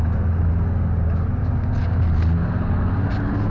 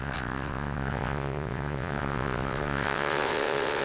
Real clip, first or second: first